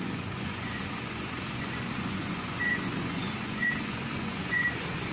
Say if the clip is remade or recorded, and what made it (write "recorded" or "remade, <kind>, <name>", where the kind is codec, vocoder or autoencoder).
remade, vocoder, Vocos